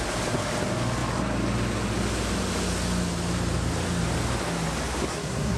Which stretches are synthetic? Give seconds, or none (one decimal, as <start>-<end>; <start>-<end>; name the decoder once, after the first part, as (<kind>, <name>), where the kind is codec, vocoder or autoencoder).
5.1-5.6 (codec, SNAC)